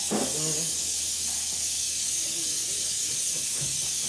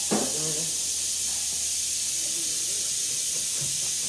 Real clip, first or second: second